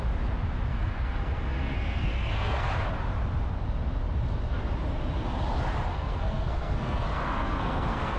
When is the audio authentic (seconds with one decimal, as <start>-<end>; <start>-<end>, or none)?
0.0-0.7; 2.7-5.9